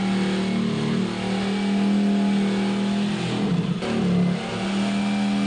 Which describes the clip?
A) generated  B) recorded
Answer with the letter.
B